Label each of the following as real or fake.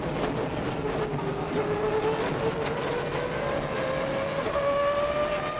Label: real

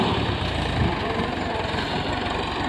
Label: real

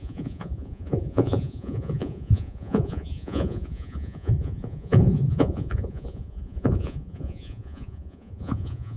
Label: fake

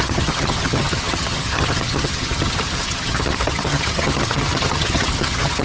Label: fake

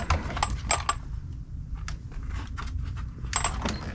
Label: real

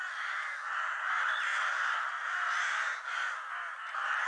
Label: real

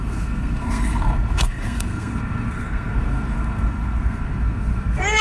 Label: fake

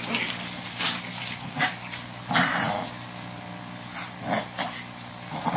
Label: real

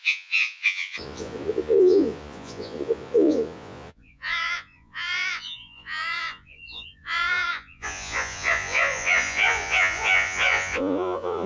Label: fake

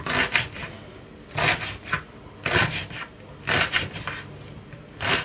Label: real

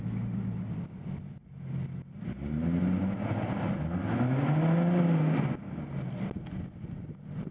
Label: real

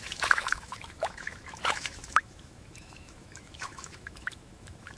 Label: fake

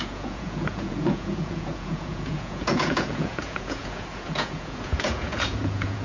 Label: fake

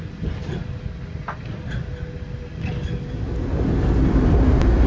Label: real